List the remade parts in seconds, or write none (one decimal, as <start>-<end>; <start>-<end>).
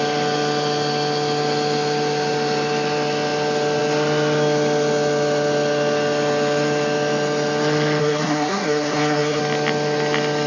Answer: 8.0-9.4